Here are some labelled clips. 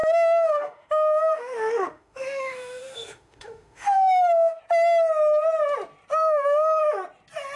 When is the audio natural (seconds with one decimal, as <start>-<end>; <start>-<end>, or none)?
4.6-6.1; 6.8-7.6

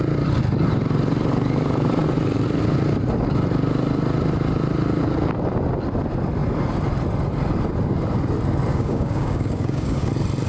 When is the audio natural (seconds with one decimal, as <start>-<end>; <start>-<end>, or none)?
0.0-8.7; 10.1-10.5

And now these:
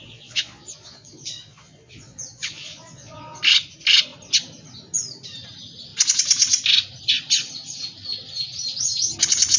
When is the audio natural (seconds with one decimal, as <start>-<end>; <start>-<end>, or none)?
3.4-9.6

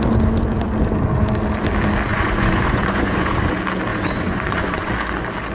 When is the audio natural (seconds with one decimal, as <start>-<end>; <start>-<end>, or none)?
0.0-2.1; 3.5-3.9; 4.9-5.5

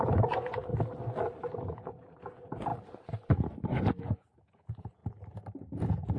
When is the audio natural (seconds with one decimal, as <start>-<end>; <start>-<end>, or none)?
0.7-1.6; 2.7-4.0; 5.0-5.8